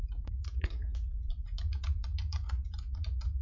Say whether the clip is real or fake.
fake